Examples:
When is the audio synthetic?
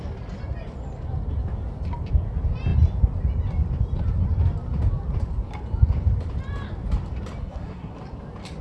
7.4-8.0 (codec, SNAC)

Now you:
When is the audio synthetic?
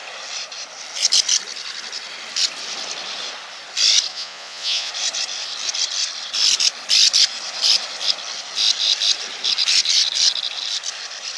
4.1-4.9 (vocoder, Vocos)